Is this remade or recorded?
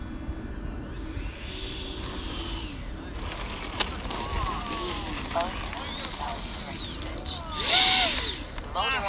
recorded